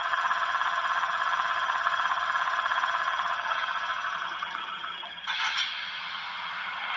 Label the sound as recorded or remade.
remade